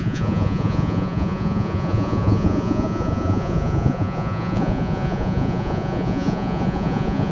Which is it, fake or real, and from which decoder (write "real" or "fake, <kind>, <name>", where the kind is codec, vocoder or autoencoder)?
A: fake, vocoder, Vocos